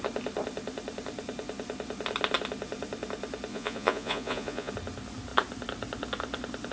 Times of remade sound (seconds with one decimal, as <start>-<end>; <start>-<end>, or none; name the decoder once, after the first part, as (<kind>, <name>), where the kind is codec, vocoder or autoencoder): 3.5-4.7 (vocoder, Vocos)